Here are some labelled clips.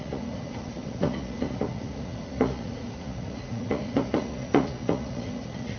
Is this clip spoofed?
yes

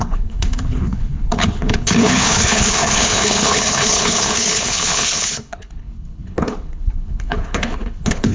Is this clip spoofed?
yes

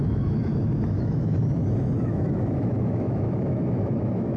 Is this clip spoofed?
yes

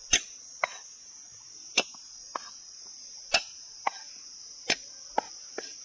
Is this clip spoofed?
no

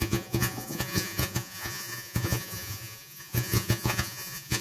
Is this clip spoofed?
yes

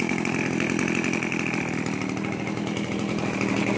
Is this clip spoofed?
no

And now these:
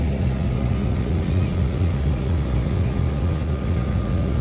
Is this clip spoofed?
yes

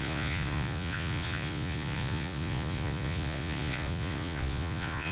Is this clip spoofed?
yes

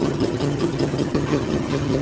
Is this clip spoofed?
yes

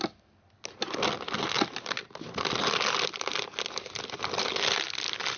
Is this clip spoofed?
no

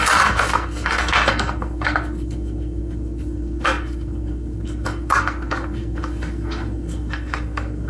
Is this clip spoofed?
yes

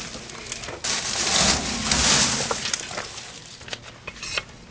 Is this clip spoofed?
no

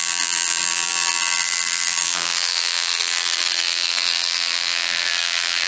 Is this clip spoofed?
yes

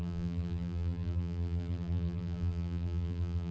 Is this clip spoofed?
yes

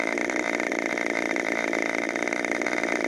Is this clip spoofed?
yes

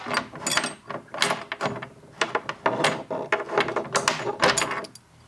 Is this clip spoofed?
no